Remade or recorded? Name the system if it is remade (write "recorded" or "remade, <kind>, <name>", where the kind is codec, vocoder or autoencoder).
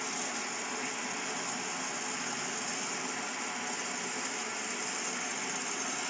recorded